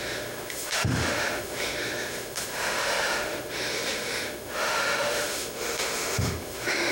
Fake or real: fake